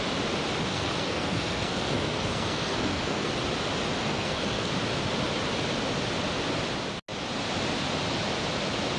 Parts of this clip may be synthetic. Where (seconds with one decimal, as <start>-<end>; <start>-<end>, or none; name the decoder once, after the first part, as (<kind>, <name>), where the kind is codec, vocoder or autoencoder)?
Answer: 0.7-3.3 (codec, SNAC); 4.0-4.7